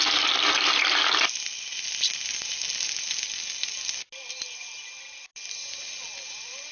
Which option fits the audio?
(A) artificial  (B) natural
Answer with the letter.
B